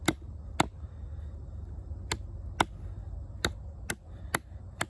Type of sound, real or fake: real